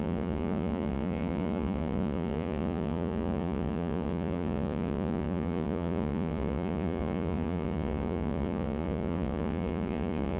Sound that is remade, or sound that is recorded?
remade